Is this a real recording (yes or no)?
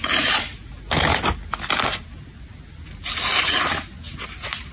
yes